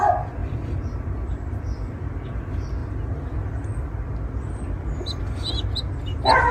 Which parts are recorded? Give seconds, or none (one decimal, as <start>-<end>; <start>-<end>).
0.0-6.5

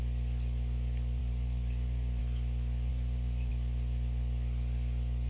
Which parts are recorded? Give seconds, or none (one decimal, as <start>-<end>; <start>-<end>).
0.0-1.2; 2.2-2.9; 3.5-5.3

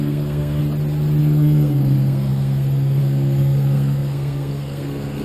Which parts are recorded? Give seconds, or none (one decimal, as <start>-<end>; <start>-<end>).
0.6-1.2